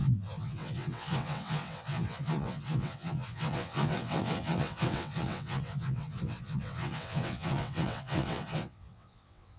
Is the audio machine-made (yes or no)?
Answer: yes